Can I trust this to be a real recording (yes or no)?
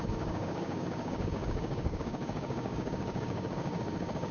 no